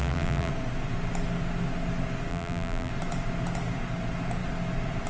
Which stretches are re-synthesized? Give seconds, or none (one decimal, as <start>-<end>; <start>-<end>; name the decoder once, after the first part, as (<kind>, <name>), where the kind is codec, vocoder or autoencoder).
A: 0.0-0.5 (vocoder, BigVGAN v2); 2.3-2.9

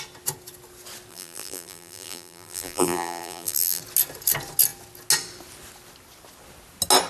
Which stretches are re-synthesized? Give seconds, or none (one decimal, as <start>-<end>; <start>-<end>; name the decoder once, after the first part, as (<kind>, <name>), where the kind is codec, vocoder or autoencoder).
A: 1.1-3.8 (vocoder, BigVGAN v2)